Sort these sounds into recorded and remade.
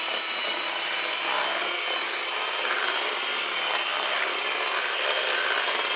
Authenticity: recorded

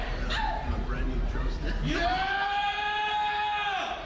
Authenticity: remade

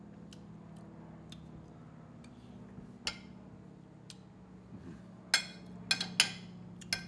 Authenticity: recorded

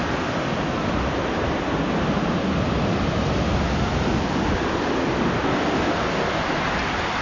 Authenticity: recorded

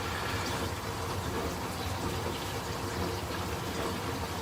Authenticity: recorded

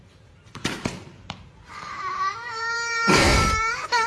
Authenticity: remade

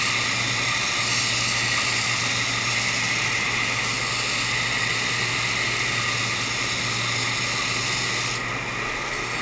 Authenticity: recorded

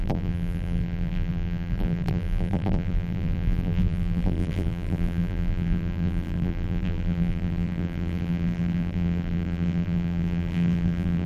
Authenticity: remade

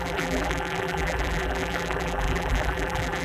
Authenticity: remade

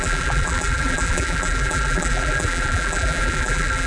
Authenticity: remade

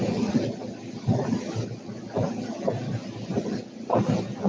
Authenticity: recorded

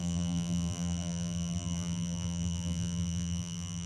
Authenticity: remade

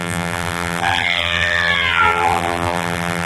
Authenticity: remade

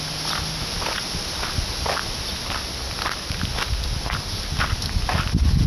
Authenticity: recorded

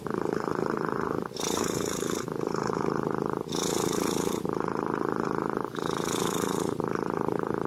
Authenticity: remade